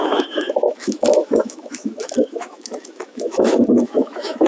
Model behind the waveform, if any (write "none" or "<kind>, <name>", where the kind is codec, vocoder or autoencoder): autoencoder, DAC-VAE